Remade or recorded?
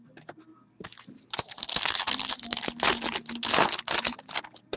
recorded